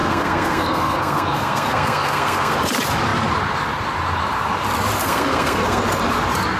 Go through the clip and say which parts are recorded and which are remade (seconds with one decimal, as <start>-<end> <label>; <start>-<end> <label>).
0.0-2.6 remade; 2.6-5.0 recorded; 5.0-5.8 remade; 5.8-6.6 recorded